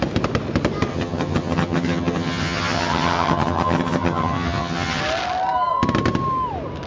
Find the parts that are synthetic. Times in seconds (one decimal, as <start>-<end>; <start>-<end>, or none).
0.9-5.0